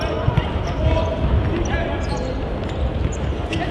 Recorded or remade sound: recorded